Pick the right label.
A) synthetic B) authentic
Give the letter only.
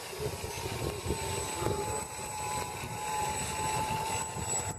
A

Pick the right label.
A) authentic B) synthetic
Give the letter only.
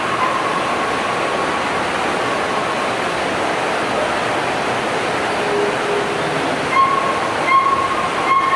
A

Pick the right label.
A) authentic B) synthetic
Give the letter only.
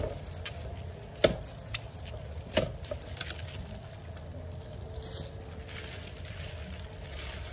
A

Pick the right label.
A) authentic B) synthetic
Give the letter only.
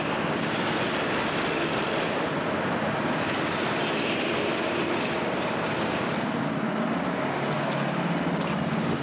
A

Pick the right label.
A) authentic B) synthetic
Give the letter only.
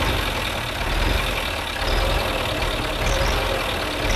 A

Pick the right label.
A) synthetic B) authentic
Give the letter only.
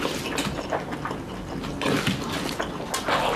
B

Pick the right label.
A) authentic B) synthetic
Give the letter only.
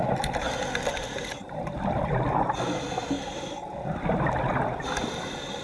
A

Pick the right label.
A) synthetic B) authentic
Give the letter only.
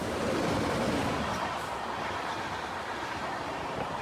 A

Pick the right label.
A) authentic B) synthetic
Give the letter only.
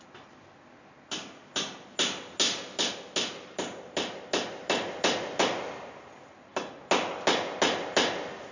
A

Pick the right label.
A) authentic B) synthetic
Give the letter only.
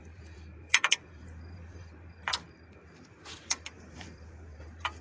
B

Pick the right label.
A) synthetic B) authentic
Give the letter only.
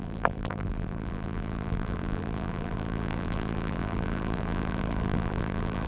A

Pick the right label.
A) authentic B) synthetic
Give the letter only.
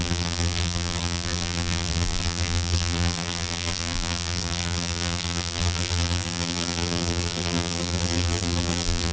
B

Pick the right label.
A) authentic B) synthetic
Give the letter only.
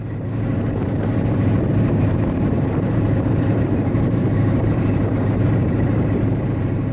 B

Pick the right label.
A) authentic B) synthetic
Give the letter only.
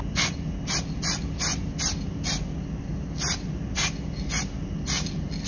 A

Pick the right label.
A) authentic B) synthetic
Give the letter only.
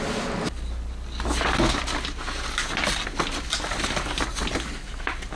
A